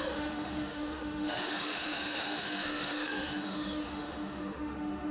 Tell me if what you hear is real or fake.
fake